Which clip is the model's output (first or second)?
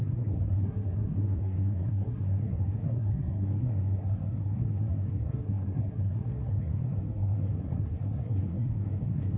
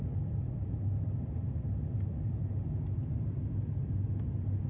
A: first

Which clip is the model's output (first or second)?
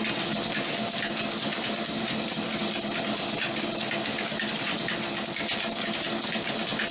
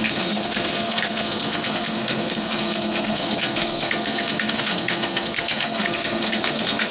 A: second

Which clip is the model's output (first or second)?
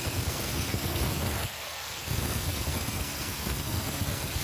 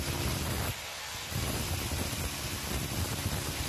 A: first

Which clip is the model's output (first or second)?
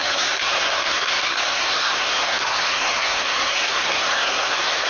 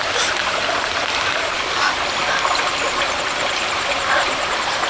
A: first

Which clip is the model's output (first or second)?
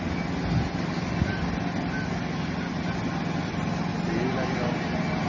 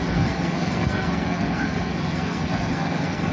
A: second